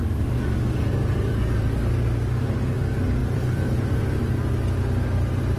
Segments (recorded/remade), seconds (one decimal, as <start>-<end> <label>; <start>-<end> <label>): 0.0-3.2 recorded; 3.2-4.0 remade; 4.0-5.6 recorded